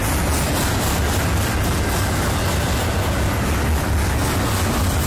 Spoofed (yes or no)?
no